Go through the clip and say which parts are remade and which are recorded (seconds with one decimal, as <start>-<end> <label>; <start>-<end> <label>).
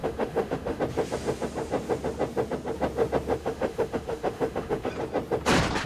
0.0-0.8 remade; 0.8-3.4 recorded; 3.4-4.9 remade; 4.9-5.9 recorded